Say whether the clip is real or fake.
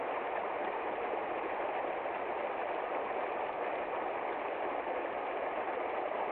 real